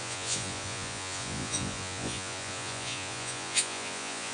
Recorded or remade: remade